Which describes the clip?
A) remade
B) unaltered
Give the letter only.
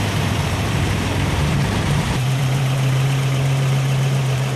A